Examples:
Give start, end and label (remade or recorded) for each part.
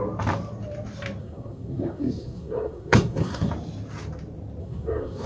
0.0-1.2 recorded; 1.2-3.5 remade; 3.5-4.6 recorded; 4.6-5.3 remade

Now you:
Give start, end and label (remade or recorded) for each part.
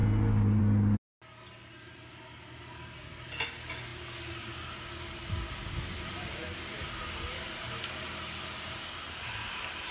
0.0-9.9 recorded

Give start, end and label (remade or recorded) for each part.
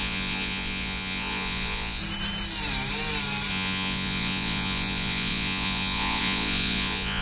0.0-2.0 remade; 2.0-3.5 recorded; 3.5-7.2 remade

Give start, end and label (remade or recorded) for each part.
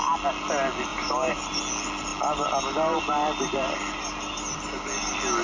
0.0-0.9 recorded; 0.9-1.6 remade; 1.6-5.4 recorded